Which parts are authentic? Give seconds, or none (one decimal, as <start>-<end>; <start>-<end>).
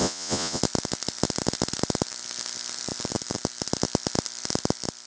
0.6-5.1